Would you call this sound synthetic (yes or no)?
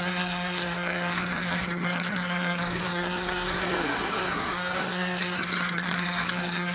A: yes